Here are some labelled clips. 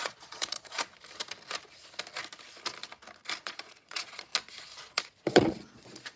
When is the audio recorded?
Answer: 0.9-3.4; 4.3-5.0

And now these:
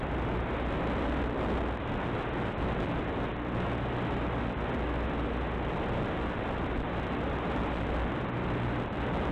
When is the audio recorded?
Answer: 0.0-9.3

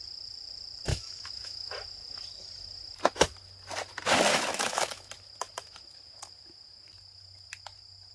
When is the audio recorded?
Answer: 0.0-0.9; 1.7-4.3; 5.1-8.1

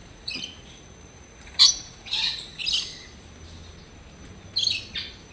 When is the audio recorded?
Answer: 2.6-5.3

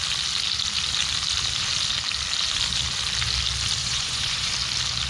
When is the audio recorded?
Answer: 0.0-3.8; 4.5-5.1